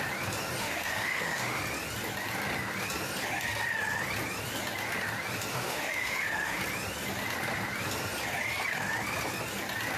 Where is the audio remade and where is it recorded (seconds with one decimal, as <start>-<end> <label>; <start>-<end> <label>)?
0.0-0.6 recorded; 0.6-1.6 remade; 1.6-5.5 recorded; 5.5-6.6 remade; 6.6-10.0 recorded